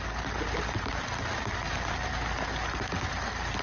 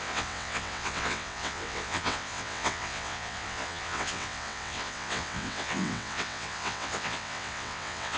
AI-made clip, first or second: second